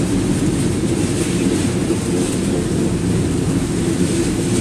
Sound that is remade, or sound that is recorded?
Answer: recorded